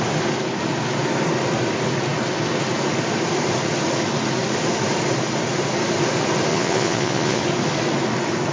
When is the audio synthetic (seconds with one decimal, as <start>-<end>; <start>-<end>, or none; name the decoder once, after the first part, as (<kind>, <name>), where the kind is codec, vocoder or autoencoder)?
6.5-7.4 (vocoder, Vocos)